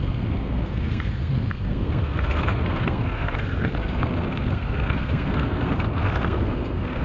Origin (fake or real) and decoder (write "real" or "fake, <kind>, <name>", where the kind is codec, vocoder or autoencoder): fake, codec, SNAC